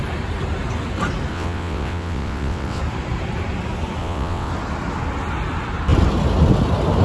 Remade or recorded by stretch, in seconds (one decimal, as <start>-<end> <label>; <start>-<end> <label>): 0.0-1.3 recorded; 1.3-2.8 remade; 2.8-4.0 recorded; 4.0-4.5 remade; 4.5-7.0 recorded